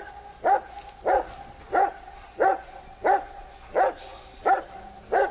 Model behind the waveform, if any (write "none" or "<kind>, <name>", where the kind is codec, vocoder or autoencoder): none